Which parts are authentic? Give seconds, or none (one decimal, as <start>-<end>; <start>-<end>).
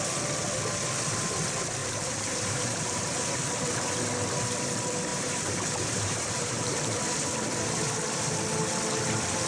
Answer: 0.0-1.8; 3.9-5.1; 7.0-9.5